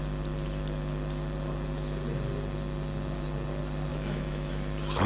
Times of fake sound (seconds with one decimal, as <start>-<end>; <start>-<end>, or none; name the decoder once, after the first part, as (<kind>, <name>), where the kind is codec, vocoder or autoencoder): 3.9-4.5 (autoencoder, DAC-VAE)